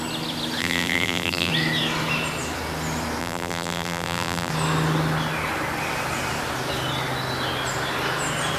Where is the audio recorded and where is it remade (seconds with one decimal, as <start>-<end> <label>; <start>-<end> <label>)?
0.0-0.6 recorded; 0.6-1.5 remade; 1.5-3.2 recorded; 3.2-4.5 remade; 4.5-8.6 recorded